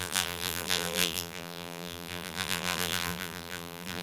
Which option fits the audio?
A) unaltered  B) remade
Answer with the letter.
B